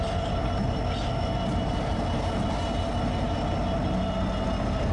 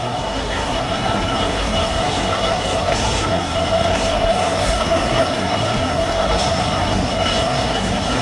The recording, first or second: first